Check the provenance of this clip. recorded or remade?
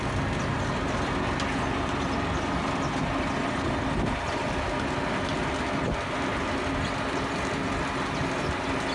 recorded